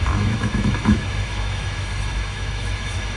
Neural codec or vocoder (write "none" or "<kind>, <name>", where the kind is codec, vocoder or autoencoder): autoencoder, DAC-VAE